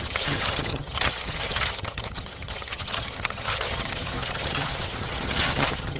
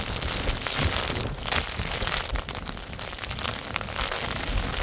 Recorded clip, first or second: second